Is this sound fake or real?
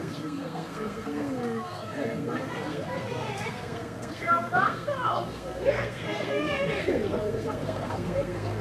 fake